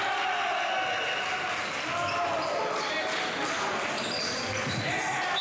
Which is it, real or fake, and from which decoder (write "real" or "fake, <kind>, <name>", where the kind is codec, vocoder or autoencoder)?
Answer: real